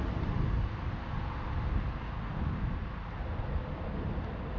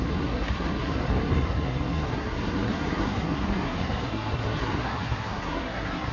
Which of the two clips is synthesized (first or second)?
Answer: second